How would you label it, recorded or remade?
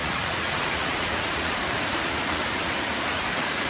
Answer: remade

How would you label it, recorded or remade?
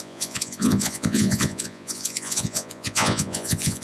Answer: remade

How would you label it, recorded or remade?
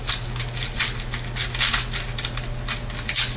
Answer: recorded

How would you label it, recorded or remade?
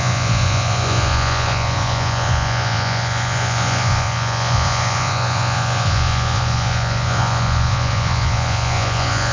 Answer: remade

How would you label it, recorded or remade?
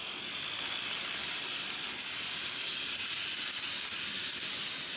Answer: recorded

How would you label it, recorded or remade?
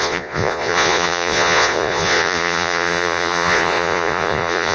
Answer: remade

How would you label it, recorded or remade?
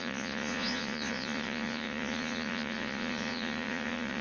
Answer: remade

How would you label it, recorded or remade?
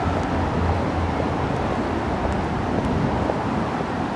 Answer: recorded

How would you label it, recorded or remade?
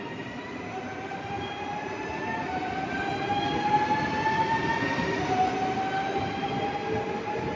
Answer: recorded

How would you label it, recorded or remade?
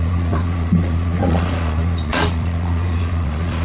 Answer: remade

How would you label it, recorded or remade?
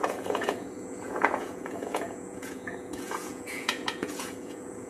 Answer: remade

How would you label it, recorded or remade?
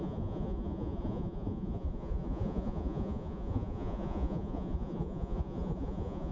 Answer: remade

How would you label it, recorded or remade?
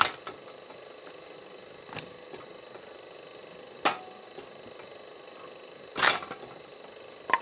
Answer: recorded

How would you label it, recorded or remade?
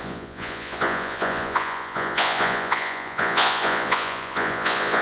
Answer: remade